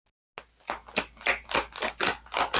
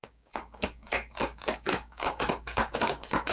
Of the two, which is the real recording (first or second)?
first